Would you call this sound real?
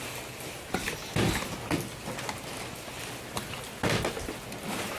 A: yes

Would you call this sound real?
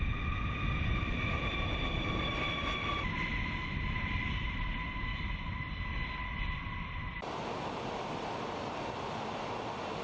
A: no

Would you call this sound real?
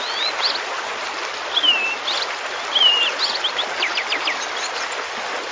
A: yes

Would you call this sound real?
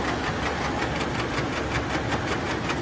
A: yes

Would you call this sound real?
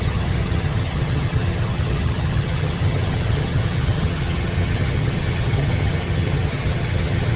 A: no